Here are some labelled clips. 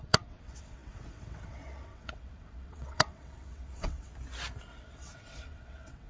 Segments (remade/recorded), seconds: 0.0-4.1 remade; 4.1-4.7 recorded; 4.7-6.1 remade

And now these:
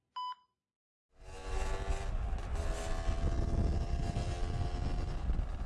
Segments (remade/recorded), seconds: 0.0-5.7 recorded

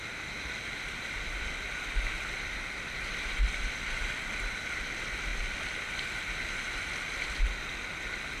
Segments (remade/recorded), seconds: 0.0-8.4 recorded

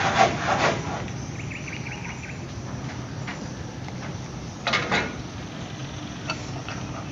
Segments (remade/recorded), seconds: 0.0-3.3 recorded; 3.3-4.9 remade; 4.9-5.8 recorded; 5.8-6.6 remade; 6.6-7.1 recorded

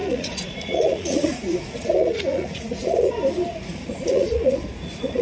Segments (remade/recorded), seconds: 0.0-3.1 remade; 3.1-3.5 recorded; 3.5-5.2 remade